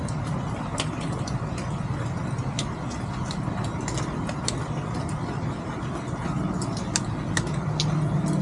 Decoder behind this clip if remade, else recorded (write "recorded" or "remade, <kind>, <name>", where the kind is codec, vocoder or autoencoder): recorded